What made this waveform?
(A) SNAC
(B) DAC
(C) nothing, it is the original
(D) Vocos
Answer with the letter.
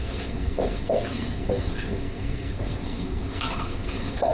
A